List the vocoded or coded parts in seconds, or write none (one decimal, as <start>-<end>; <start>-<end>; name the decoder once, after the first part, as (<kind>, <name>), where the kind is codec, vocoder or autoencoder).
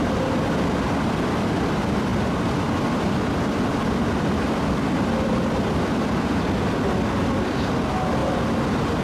0.0-8.2 (vocoder, BigVGAN v2)